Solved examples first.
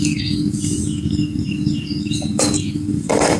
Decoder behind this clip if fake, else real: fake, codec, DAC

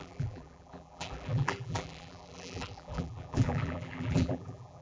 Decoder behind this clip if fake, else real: fake, vocoder, BigVGAN v2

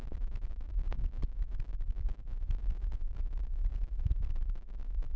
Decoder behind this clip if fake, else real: real